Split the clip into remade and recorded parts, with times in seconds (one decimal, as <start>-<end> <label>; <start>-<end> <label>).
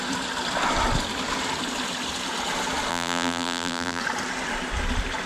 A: 0.0-2.9 recorded; 2.9-4.0 remade; 4.0-5.3 recorded